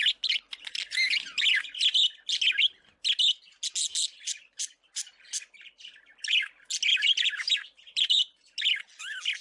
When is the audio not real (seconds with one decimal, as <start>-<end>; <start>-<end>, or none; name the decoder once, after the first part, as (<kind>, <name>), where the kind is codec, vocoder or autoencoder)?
6.9-8.4 (vocoder, BigVGAN v2)